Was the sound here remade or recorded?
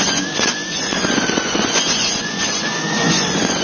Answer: remade